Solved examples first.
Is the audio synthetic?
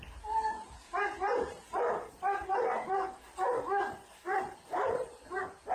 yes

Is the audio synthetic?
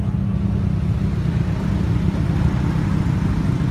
no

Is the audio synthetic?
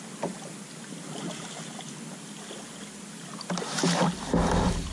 no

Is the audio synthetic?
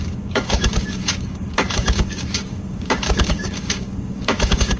yes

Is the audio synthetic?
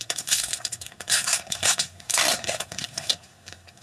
yes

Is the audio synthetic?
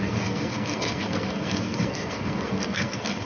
yes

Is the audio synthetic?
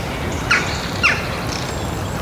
no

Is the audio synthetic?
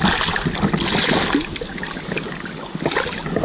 no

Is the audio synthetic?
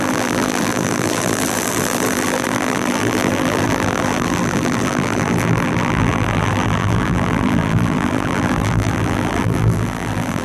yes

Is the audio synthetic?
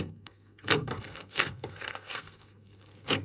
yes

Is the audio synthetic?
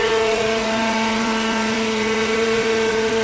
yes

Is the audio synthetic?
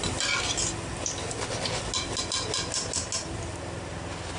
no